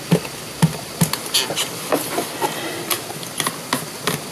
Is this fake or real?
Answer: real